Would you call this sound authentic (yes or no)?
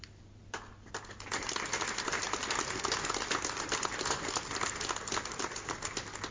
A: yes